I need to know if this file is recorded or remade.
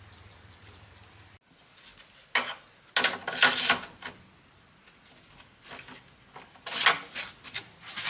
recorded